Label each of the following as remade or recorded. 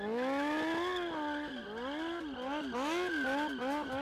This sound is recorded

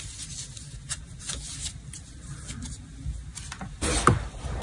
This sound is recorded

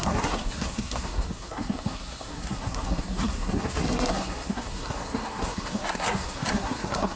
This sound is remade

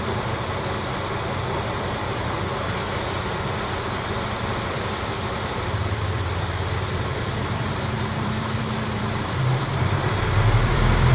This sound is remade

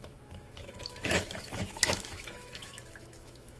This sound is remade